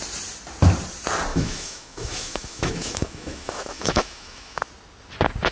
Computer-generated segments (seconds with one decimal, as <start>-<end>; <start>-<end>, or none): 1.3-4.6

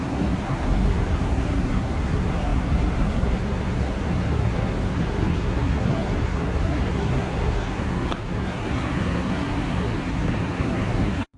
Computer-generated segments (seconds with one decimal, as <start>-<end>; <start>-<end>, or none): 0.0-11.4

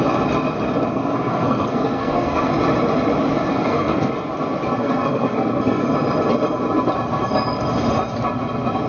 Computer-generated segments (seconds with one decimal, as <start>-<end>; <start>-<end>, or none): 0.9-2.5; 3.5-4.1; 4.8-5.8

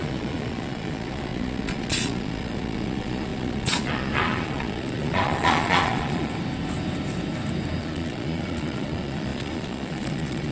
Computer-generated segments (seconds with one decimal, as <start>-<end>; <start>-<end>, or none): 0.0-6.3; 7.8-10.5